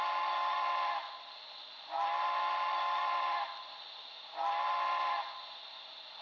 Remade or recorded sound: recorded